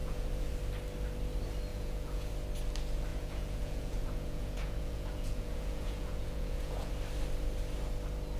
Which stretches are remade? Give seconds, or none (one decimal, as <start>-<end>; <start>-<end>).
0.0-0.5; 1.7-2.3; 3.1-6.9